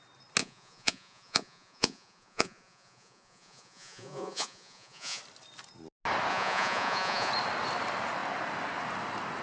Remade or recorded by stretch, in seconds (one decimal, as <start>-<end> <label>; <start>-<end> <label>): 0.0-0.4 recorded; 0.4-5.2 remade; 5.2-6.3 recorded; 6.3-7.3 remade; 7.3-9.4 recorded